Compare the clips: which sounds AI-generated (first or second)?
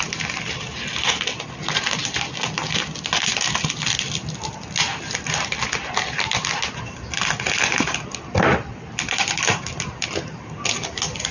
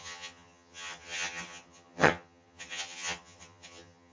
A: second